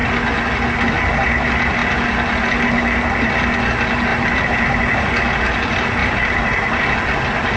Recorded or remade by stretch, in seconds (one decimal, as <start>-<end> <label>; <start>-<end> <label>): 0.0-4.1 recorded; 4.1-4.8 remade; 4.8-6.0 recorded; 6.0-6.8 remade; 6.8-7.6 recorded